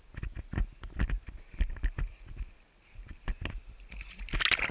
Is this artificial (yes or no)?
no